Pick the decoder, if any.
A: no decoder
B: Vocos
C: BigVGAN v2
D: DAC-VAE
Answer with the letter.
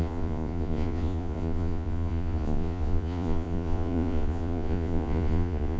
B